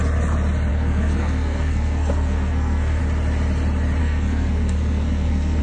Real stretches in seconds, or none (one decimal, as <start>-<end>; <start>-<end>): 0.0-0.7; 3.0-4.0